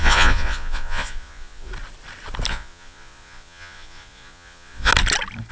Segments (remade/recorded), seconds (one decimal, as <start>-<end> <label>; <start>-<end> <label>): 0.0-1.7 remade; 1.7-2.5 recorded; 2.5-4.9 remade; 4.9-5.5 recorded